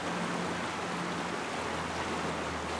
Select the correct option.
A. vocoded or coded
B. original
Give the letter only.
B